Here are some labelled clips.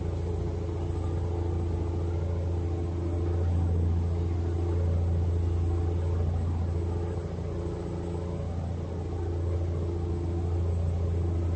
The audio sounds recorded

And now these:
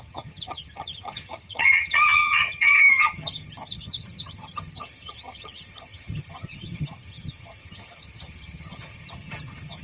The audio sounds remade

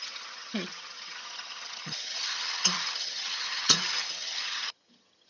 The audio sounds remade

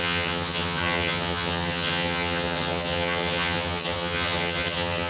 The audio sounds remade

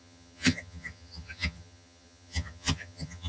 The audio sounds remade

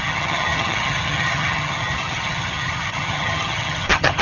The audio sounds remade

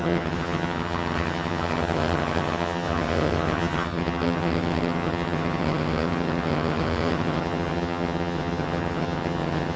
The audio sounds remade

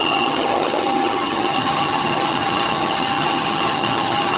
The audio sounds remade